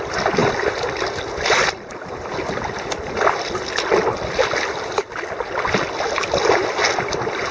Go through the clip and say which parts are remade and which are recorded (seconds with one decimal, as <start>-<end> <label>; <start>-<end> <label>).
0.0-7.5 recorded